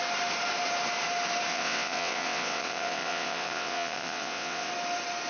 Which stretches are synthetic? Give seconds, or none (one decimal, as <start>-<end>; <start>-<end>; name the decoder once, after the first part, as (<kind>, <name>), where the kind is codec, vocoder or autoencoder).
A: 1.5-4.7 (vocoder, WaveNeXt)